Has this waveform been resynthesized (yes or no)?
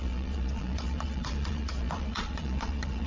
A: yes